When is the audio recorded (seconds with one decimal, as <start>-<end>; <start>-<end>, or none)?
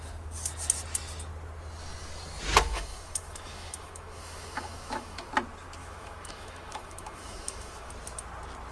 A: 0.0-2.7; 5.3-5.8; 7.9-8.7